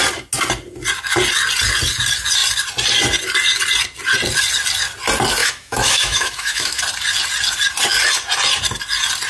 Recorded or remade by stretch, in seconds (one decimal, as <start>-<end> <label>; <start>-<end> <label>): 0.0-5.4 recorded; 5.4-6.8 remade; 6.8-9.3 recorded